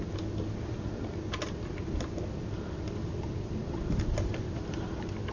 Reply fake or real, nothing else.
real